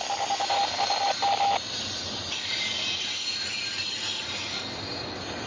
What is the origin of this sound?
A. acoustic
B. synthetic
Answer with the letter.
A